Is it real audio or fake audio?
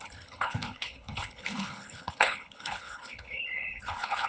fake